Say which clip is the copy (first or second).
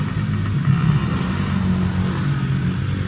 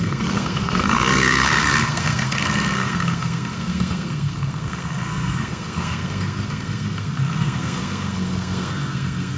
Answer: second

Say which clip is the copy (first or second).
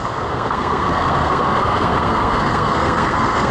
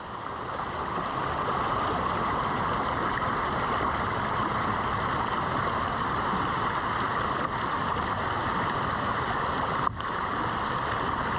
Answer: first